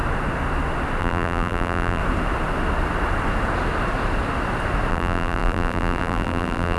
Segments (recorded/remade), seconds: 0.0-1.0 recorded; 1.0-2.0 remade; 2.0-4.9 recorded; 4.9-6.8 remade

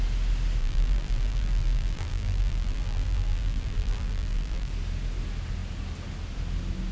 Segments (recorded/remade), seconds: 0.0-0.6 recorded; 0.6-4.7 remade; 4.7-6.9 recorded

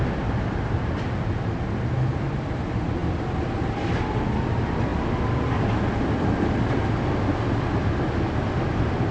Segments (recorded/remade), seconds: 0.0-9.1 recorded

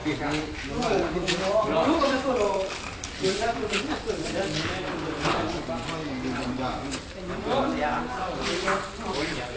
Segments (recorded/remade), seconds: 0.0-4.3 remade; 4.3-9.6 recorded

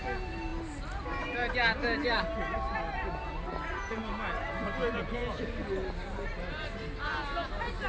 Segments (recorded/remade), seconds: 0.0-7.9 recorded

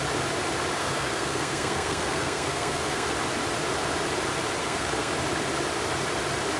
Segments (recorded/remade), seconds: 0.0-0.8 recorded; 0.8-3.1 remade; 3.1-4.6 recorded; 4.6-5.1 remade; 5.1-6.6 recorded

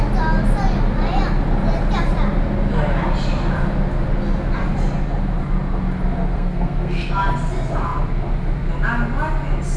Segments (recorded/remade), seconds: 0.0-6.3 recorded; 6.3-7.1 remade; 7.1-9.8 recorded